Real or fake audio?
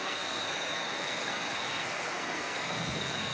fake